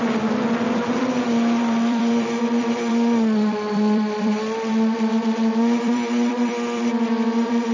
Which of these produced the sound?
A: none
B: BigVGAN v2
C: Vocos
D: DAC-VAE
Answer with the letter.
B